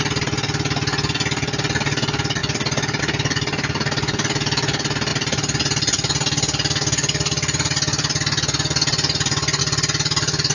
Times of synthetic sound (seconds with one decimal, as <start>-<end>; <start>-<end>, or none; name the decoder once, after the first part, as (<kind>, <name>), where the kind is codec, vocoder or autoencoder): none